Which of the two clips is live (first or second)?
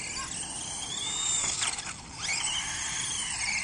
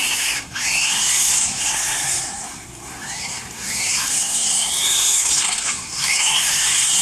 first